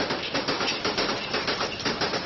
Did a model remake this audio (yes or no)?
no